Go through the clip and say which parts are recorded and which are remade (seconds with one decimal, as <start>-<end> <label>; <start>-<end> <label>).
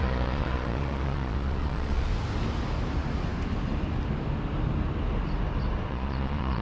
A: 0.0-2.1 remade; 2.1-5.9 recorded; 5.9-6.6 remade